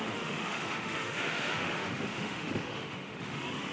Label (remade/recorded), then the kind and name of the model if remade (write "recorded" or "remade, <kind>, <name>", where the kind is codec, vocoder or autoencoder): remade, autoencoder, DAC-VAE